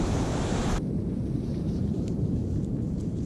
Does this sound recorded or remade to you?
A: remade